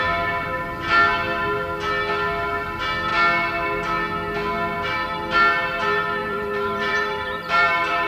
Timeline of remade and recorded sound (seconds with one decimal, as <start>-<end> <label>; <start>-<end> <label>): 0.0-6.2 recorded; 6.2-8.1 remade

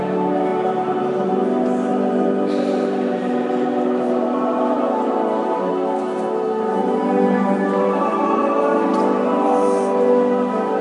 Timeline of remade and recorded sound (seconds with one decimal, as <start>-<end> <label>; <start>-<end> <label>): 0.0-0.5 recorded; 0.5-1.3 remade; 1.3-1.9 recorded; 1.9-5.7 remade; 5.7-6.8 recorded; 6.8-8.4 remade; 8.4-10.8 recorded

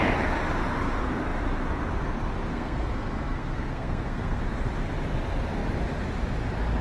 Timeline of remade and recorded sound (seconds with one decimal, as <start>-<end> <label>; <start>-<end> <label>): 0.0-2.5 recorded; 2.5-4.4 remade; 4.4-6.8 recorded